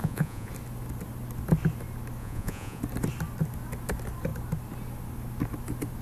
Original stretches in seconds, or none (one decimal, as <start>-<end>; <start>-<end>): 0.5-2.2; 2.8-6.0